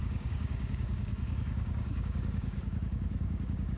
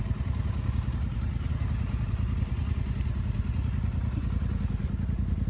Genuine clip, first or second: second